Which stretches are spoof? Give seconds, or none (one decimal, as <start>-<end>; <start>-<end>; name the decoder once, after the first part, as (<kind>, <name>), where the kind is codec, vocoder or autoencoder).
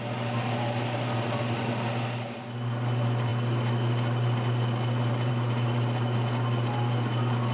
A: none